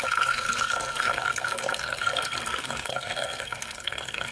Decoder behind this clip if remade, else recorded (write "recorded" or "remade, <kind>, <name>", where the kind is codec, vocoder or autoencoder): remade, codec, SNAC